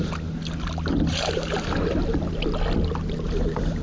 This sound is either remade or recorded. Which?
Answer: recorded